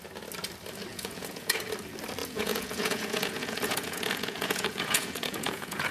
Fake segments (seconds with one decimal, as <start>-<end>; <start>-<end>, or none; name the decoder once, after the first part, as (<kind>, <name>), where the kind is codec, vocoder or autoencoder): 0.9-1.6 (vocoder, Vocos); 2.2-5.9